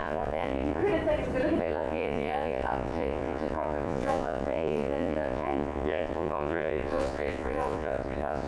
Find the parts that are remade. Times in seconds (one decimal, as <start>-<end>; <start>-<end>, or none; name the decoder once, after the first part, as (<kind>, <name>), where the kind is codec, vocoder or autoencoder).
0.0-0.8 (vocoder, Vocos); 1.6-8.5